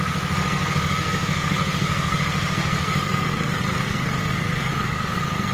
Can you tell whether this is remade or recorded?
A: remade